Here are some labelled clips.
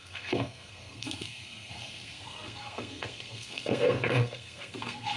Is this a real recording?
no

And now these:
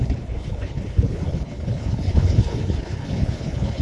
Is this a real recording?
no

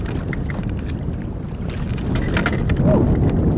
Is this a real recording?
yes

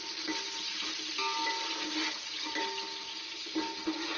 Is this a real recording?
yes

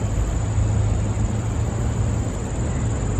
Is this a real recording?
yes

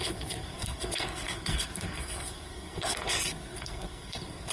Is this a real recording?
no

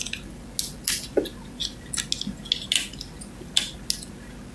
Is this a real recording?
yes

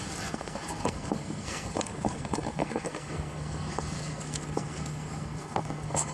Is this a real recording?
no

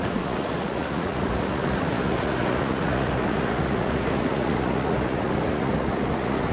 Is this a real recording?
no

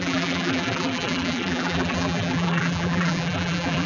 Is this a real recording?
no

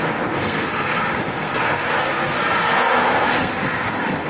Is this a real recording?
no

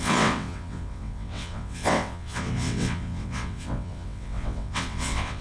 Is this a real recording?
no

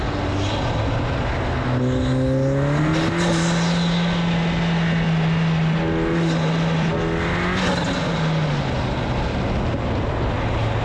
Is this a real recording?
yes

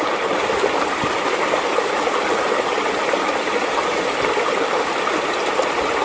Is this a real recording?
yes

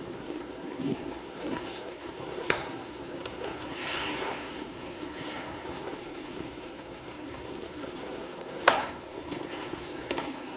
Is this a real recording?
no